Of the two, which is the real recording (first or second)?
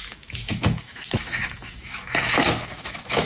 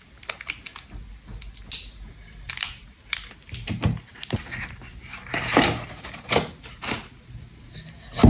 second